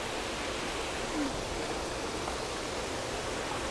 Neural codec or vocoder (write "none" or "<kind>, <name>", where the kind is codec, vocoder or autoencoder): none